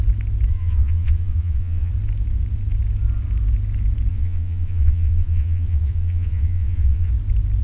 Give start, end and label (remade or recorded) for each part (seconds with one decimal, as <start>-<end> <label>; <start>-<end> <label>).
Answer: 0.0-0.5 recorded; 0.5-1.9 remade; 1.9-4.1 recorded; 4.1-7.1 remade; 7.1-7.6 recorded